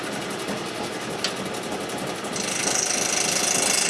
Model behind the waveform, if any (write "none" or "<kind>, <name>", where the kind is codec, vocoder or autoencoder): none